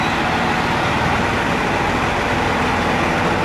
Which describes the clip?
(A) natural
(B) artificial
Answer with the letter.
A